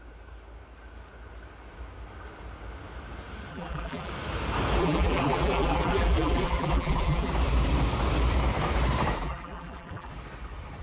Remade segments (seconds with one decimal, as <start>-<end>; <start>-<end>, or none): 3.5-4.1; 4.8-7.3; 9.2-10.1